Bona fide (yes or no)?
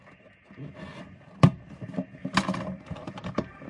yes